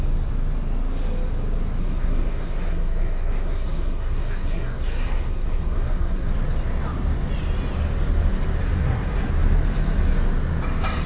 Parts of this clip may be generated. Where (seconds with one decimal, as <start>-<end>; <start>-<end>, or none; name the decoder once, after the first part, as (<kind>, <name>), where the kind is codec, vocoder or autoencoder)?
1.8-6.3 (codec, SNAC); 8.6-9.3